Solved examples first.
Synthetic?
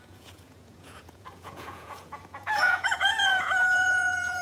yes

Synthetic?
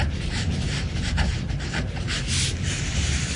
yes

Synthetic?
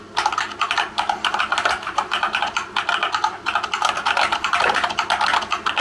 no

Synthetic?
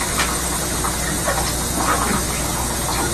no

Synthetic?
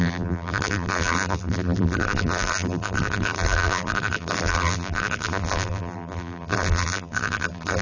yes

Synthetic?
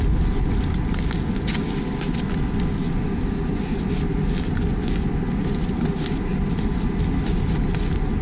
no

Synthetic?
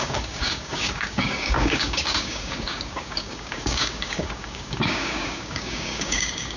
yes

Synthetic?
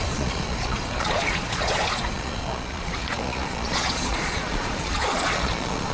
yes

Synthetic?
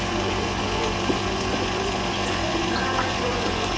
yes